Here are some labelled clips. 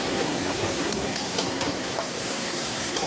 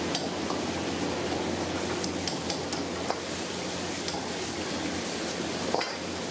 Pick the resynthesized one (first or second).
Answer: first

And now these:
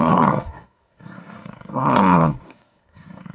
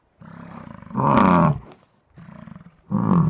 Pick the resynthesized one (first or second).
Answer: first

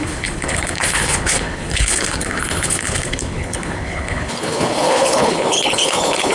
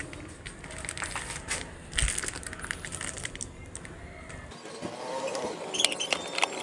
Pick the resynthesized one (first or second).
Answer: first